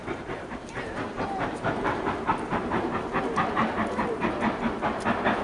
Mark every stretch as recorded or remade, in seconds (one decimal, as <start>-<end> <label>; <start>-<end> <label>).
0.0-3.2 remade; 3.2-5.4 recorded